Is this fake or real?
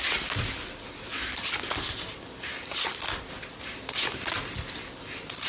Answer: real